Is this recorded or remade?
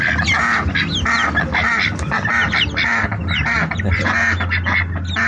recorded